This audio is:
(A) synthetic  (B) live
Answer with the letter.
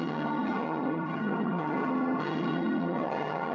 A